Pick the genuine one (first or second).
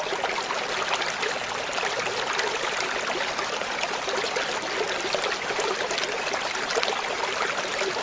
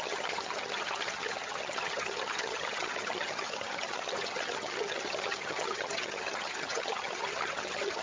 first